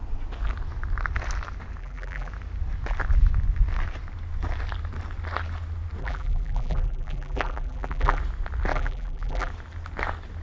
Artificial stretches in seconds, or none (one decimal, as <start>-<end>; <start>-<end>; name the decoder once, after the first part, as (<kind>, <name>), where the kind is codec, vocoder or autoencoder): 1.8-2.3 (vocoder, BigVGAN v2); 6.0-8.2; 8.7-9.5

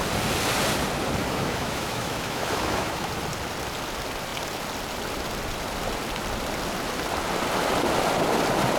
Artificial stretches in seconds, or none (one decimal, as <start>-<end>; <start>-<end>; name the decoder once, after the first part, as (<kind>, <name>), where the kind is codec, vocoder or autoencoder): 1.2-3.1 (autoencoder, DAC-VAE)

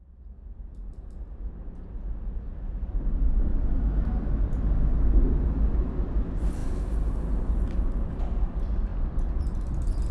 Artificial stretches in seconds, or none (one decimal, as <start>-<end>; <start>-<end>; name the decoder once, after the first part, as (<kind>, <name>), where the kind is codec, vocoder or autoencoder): none

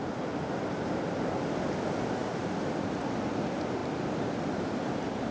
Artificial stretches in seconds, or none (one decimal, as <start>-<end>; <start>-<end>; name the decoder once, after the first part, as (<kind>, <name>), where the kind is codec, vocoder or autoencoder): none

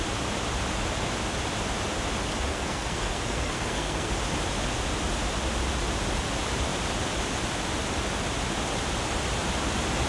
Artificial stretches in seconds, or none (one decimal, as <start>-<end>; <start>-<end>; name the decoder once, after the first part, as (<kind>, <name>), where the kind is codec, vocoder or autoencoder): 2.5-4.1 (codec, SNAC)

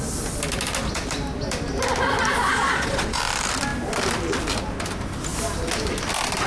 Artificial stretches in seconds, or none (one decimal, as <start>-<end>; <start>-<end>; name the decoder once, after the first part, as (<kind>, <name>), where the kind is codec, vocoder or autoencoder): 2.5-3.2 (vocoder, Vocos)

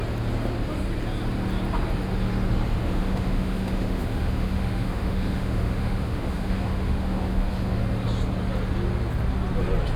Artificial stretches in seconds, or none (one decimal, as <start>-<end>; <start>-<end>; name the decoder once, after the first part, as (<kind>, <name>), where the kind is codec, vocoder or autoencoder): 2.8-7.8 (autoencoder, DAC-VAE)

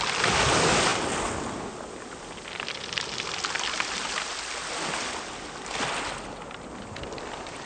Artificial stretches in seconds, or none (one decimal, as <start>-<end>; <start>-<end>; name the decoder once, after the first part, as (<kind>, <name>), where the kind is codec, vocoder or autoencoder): none